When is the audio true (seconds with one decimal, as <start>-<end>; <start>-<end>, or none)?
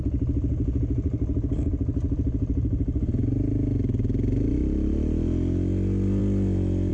0.0-6.9